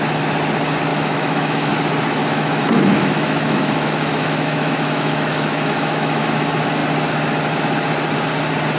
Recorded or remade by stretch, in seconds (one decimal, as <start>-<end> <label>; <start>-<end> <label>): 0.0-0.9 recorded; 0.9-1.7 remade; 1.7-2.2 recorded; 2.2-6.3 remade; 6.3-8.8 recorded

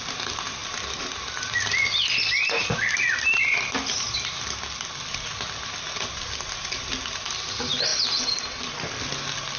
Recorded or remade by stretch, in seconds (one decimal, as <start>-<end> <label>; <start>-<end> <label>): 0.0-7.9 recorded; 7.9-8.7 remade; 8.7-9.6 recorded

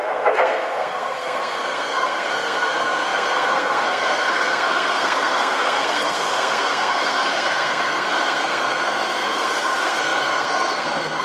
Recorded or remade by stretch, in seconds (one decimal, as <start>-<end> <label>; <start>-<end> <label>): 0.0-11.2 remade

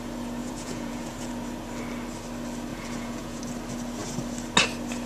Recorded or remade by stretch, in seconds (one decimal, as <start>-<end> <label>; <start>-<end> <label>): 0.0-0.4 recorded; 0.4-1.3 remade; 1.3-2.7 recorded; 2.7-3.4 remade; 3.4-5.1 recorded

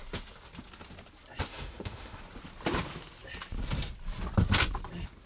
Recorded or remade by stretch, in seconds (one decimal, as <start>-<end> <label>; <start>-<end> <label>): 0.0-1.5 recorded; 1.5-2.2 remade; 2.2-5.3 recorded

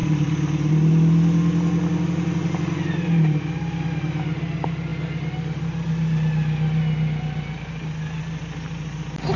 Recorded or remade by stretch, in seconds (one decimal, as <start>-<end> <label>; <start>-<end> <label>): 0.0-0.7 remade; 0.7-9.4 recorded